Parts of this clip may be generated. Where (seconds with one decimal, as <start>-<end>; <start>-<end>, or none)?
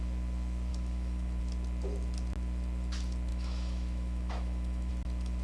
0.7-1.4; 3.3-4.9